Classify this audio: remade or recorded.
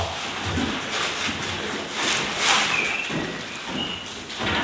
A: recorded